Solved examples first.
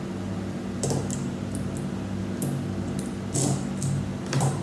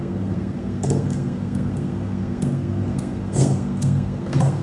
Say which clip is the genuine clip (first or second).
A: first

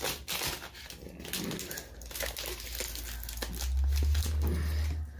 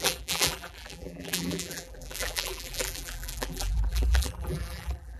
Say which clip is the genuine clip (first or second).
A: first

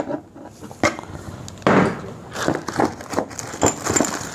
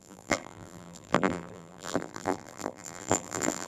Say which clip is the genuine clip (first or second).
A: first